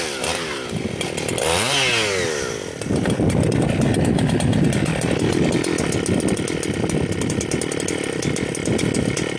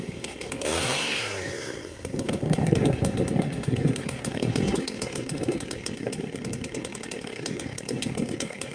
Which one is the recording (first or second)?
first